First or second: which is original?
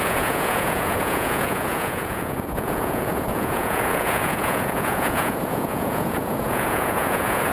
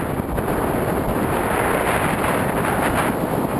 second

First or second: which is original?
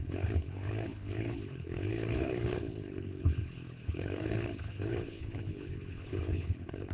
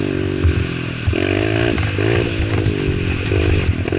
second